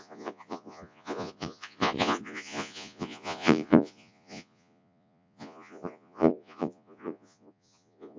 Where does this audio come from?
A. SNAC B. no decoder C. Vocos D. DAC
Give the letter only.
C